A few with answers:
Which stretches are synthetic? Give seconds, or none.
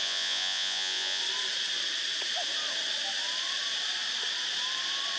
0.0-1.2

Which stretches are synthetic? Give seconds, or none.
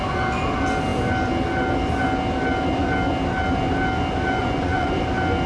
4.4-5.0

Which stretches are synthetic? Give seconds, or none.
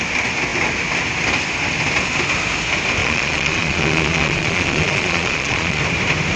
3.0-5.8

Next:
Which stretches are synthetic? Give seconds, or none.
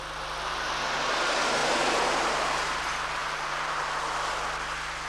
1.6-2.8; 3.2-4.0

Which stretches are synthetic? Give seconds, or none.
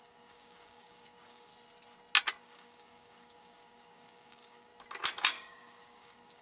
0.0-1.5; 2.4-4.7; 5.3-6.4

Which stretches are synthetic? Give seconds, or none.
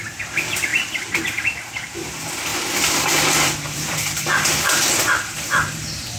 0.7-1.2; 2.5-6.2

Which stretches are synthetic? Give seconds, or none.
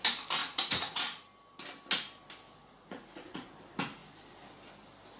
0.4-1.0; 2.6-3.5